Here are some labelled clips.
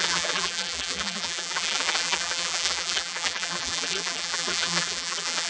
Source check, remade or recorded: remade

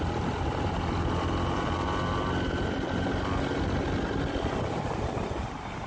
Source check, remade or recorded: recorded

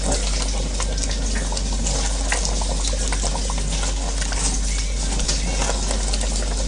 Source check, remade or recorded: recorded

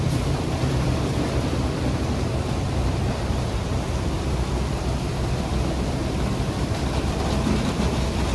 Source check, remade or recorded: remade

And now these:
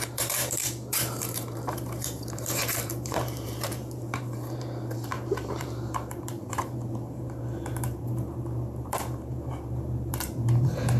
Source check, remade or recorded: remade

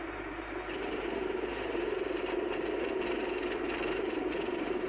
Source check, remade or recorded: remade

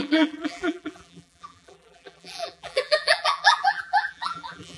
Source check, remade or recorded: remade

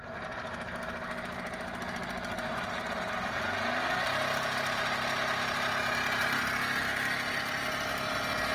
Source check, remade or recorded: recorded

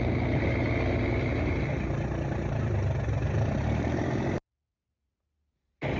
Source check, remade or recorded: remade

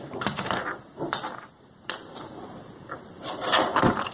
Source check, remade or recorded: remade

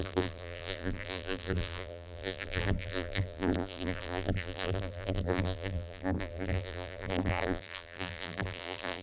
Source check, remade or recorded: remade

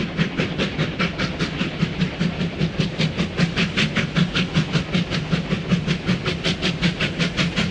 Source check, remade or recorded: recorded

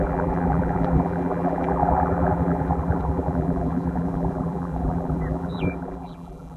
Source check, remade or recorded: remade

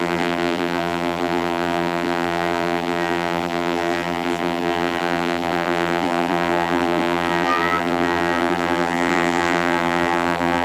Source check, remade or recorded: remade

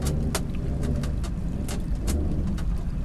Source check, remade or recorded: recorded